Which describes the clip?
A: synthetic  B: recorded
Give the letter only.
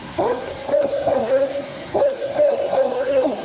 A